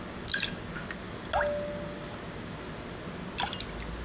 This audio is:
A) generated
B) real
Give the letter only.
B